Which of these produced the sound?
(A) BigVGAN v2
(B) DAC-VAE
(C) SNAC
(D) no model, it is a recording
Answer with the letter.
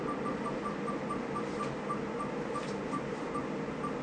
D